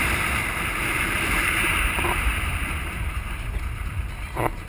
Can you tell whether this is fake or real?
fake